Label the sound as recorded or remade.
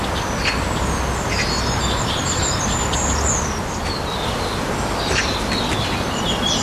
recorded